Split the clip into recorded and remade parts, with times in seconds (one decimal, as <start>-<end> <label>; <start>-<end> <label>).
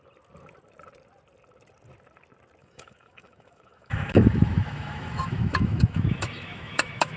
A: 0.0-2.6 recorded; 2.6-7.2 remade